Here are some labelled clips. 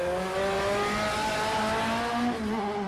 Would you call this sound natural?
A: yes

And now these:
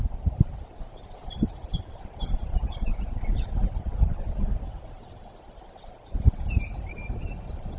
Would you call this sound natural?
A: yes